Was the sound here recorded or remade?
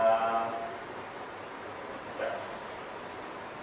recorded